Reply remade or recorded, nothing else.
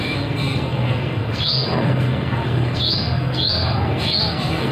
remade